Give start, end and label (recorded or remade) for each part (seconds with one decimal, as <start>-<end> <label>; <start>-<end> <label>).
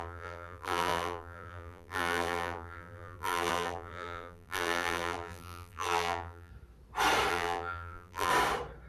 0.0-6.5 remade; 6.5-7.3 recorded; 7.3-8.3 remade; 8.3-8.9 recorded